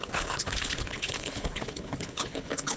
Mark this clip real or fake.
fake